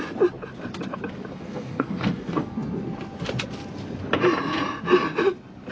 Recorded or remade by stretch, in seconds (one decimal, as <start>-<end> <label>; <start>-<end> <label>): 0.0-1.3 recorded; 1.3-2.8 remade; 2.8-5.7 recorded